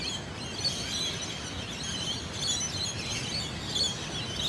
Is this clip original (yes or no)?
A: yes